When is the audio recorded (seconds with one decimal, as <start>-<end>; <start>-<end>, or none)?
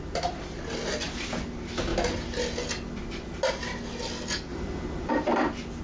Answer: 0.0-1.9; 2.4-4.5; 5.1-5.8